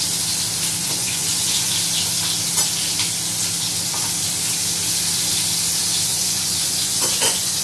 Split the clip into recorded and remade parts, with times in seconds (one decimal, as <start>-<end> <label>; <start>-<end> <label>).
0.0-0.8 recorded; 0.8-1.8 remade; 1.8-6.1 recorded; 6.1-7.6 remade